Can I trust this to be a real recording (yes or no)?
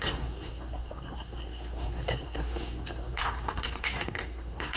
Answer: no